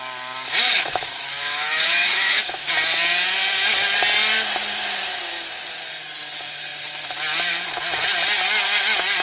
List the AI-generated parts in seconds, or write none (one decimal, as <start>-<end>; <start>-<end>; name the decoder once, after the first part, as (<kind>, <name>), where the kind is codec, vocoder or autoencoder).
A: 0.7-2.7 (autoencoder, DAC-VAE)